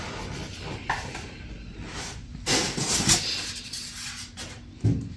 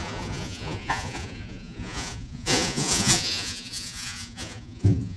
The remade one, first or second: second